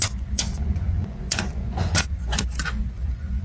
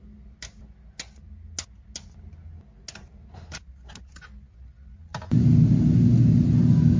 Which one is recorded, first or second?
second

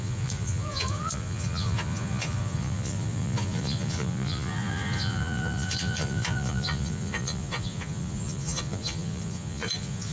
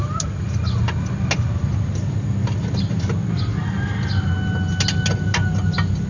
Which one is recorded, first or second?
second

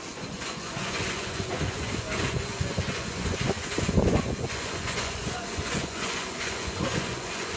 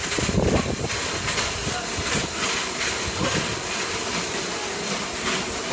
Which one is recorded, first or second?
second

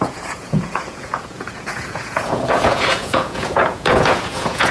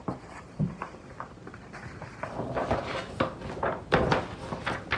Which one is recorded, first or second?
second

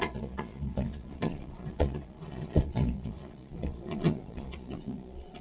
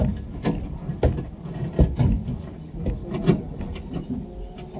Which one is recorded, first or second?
second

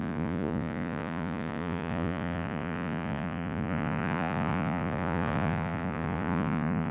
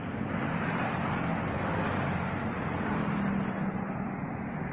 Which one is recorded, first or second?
second